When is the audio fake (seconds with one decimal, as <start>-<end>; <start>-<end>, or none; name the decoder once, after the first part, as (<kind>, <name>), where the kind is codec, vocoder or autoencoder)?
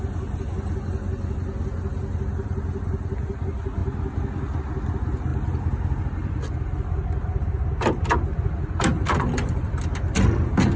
8.9-9.7 (vocoder, BigVGAN v2)